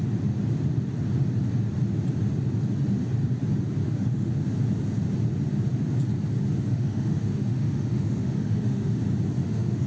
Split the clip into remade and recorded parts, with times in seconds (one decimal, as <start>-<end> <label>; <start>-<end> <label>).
0.0-3.8 recorded; 3.8-4.3 remade; 4.3-6.7 recorded; 6.7-9.0 remade; 9.0-9.4 recorded; 9.4-9.9 remade